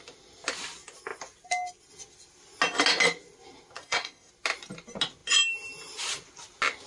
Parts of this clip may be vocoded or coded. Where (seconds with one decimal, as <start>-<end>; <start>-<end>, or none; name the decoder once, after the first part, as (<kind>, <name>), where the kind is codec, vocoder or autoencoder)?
3.8-4.3 (codec, SNAC)